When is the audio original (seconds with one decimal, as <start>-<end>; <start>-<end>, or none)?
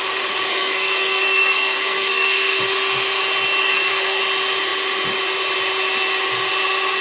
0.0-0.5; 2.6-3.6; 4.2-7.0